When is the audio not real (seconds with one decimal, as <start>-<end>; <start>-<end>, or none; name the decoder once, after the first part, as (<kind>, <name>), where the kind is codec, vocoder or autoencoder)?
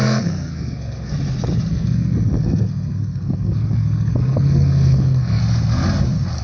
0.0-1.1 (codec, SNAC); 1.7-5.4